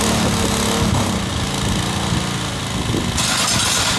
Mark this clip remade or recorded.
recorded